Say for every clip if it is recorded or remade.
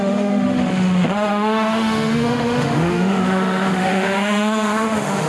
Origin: remade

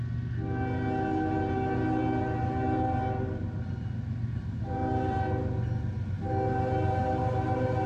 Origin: recorded